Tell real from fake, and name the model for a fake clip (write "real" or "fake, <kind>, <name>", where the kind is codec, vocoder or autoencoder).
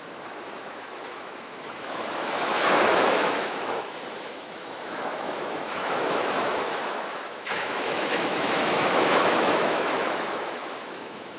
fake, autoencoder, DAC-VAE